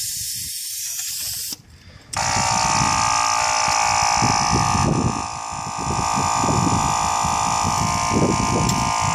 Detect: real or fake real